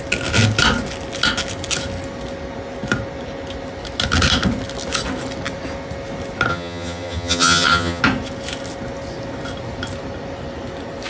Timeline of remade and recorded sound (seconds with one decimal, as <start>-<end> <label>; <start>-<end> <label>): 0.0-6.5 recorded; 6.5-8.0 remade; 8.0-11.1 recorded